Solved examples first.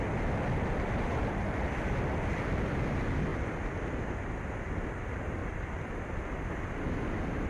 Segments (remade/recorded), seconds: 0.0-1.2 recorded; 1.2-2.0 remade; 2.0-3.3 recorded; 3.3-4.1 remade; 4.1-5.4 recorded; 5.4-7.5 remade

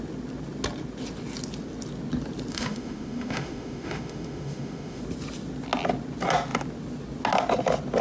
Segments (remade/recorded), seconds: 0.0-2.5 recorded; 2.5-5.0 remade; 5.0-8.0 recorded

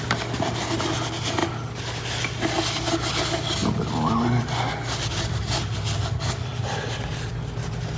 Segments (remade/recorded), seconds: 0.0-8.0 recorded

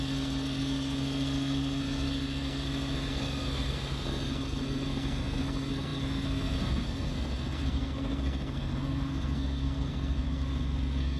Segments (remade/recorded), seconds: 0.0-11.2 remade

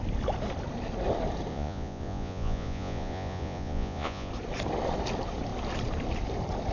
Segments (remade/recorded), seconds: 0.0-1.5 recorded; 1.5-4.3 remade; 4.3-6.7 recorded

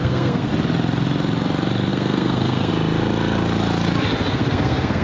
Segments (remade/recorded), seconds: 0.0-0.5 remade; 0.5-1.9 recorded; 1.9-2.7 remade; 2.7-4.3 recorded; 4.3-5.0 remade

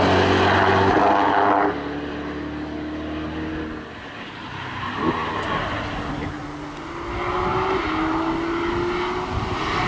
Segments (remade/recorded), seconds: 0.0-9.9 recorded

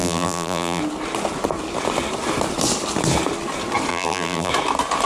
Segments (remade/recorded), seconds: 0.0-0.8 remade; 0.8-3.9 recorded; 3.9-4.5 remade; 4.5-5.1 recorded